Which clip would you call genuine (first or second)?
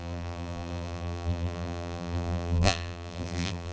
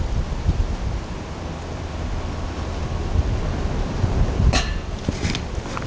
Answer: second